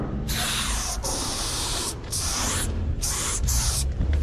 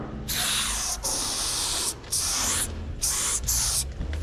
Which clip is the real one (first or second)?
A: second